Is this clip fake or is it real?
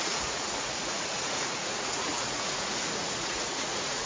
fake